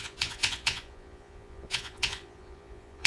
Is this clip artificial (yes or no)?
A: yes